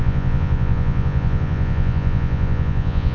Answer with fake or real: fake